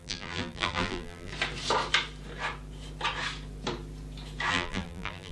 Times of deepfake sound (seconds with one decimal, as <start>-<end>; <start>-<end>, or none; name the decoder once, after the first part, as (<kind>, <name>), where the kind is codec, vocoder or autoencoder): 0.0-1.3 (vocoder, BigVGAN v2); 4.5-5.3